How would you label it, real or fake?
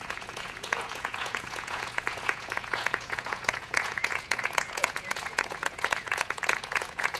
fake